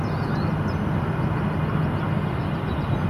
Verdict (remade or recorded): recorded